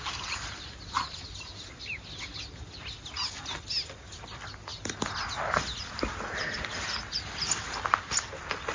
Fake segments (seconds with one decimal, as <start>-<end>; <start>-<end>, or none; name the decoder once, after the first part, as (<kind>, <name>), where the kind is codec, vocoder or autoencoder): none